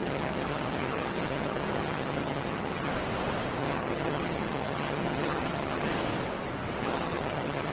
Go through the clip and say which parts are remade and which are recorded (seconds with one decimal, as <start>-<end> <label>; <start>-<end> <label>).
0.0-2.9 remade; 2.9-3.6 recorded; 3.6-5.9 remade; 5.9-6.8 recorded; 6.8-7.7 remade